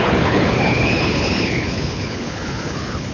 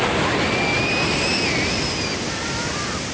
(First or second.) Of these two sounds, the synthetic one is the first